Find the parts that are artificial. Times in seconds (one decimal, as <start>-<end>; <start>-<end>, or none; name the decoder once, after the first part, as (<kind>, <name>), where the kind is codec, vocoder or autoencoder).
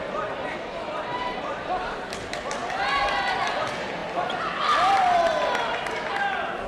none